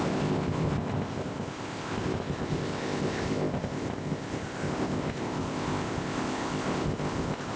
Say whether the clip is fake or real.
fake